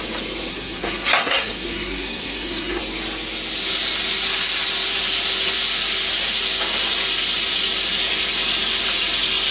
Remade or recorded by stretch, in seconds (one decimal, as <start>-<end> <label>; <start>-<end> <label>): 0.0-0.5 recorded; 0.5-2.8 remade; 2.8-9.5 recorded